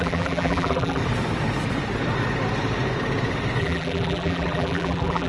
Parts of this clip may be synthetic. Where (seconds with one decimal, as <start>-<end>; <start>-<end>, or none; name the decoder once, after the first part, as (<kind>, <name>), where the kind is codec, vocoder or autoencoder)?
0.0-1.0 (vocoder, BigVGAN v2); 3.6-5.3